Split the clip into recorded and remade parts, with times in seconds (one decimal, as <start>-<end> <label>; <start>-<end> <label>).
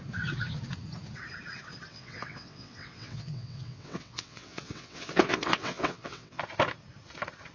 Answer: 0.0-1.9 recorded; 1.9-6.4 remade; 6.4-7.5 recorded